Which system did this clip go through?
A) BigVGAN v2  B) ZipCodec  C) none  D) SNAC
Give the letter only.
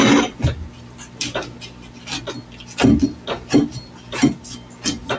C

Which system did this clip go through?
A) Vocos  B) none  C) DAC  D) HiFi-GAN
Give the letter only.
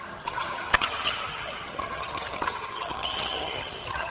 D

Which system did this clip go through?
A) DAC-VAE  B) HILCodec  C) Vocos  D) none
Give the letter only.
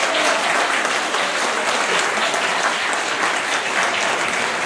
D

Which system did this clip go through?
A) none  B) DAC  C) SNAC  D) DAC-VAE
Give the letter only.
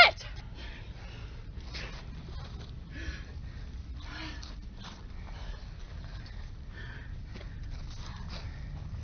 A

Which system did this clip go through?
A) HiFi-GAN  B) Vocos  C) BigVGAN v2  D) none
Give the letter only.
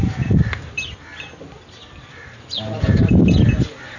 D